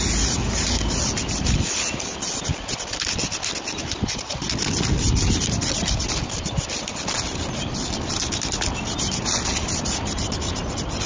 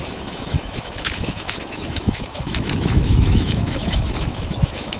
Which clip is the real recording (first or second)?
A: first